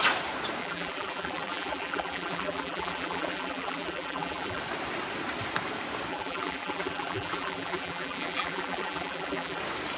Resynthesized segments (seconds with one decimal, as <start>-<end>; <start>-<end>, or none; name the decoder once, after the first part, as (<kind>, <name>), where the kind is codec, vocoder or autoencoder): 0.6-4.6 (vocoder, BigVGAN v2); 6.1-9.6

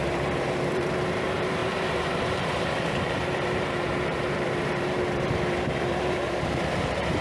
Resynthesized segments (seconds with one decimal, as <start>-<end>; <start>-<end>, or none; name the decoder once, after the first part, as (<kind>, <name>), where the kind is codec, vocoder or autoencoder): 0.0-7.2 (vocoder, BigVGAN v2)

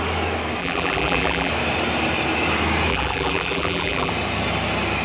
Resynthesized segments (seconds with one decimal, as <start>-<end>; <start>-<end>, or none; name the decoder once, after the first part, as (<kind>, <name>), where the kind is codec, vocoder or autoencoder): 0.6-1.5 (vocoder, BigVGAN v2); 2.9-4.1

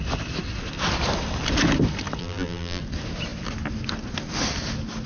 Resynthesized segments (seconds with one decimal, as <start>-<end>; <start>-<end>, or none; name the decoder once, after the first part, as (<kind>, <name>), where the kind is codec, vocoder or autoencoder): 2.2-2.8 (vocoder, BigVGAN v2)

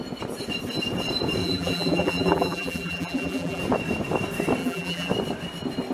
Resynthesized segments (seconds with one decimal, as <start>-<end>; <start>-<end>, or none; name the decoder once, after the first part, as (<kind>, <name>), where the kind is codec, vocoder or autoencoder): 1.4-3.6 (vocoder, BigVGAN v2); 4.6-5.1

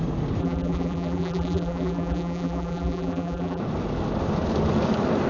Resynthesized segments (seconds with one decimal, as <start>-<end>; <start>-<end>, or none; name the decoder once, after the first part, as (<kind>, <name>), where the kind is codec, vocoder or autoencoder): 0.4-3.6 (vocoder, BigVGAN v2)